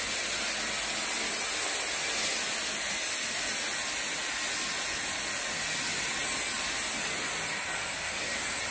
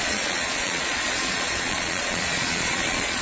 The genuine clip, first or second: first